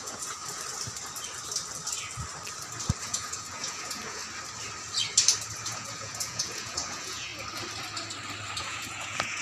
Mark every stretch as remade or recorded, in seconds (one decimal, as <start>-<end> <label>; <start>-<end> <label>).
0.0-0.4 remade; 0.4-3.0 recorded; 3.0-4.2 remade; 4.2-5.6 recorded; 5.6-7.3 remade; 7.3-8.6 recorded; 8.6-9.4 remade